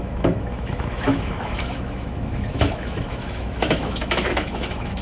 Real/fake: fake